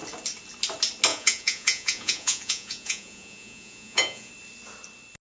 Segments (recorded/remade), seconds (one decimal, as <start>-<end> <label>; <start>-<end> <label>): 0.0-1.1 recorded; 1.1-4.3 remade; 4.3-5.3 recorded